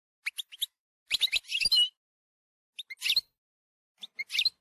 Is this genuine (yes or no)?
yes